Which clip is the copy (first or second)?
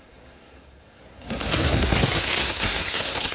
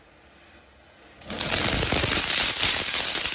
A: first